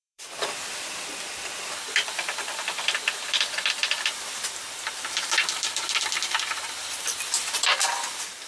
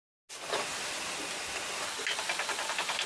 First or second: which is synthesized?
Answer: first